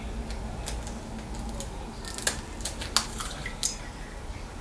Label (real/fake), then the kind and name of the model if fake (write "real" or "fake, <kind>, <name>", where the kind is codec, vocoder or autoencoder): real